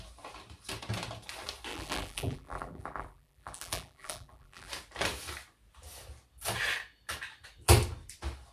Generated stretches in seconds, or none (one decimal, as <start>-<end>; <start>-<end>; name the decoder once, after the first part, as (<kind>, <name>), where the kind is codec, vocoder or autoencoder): 1.7-4.7 (vocoder, BigVGAN v2)